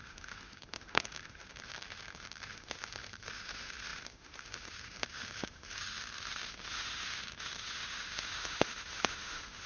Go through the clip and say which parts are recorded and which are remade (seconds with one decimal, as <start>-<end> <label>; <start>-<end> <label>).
0.0-9.7 remade